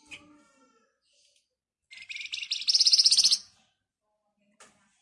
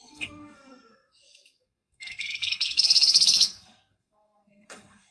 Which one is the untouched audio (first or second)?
first